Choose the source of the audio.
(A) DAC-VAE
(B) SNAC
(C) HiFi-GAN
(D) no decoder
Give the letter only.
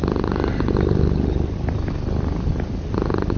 D